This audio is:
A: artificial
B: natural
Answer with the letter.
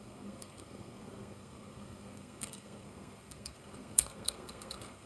A